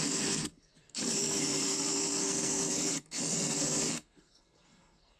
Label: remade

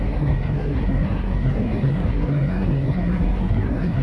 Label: remade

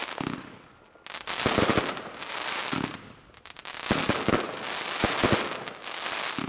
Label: recorded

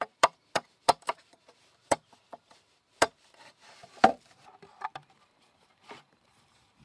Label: remade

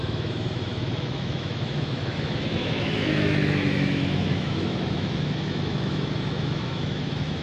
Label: remade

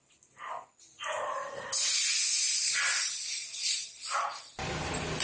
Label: recorded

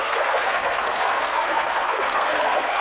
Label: remade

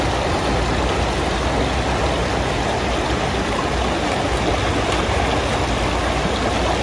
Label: recorded